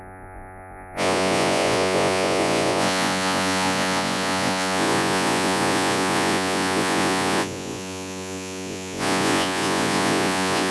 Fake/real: fake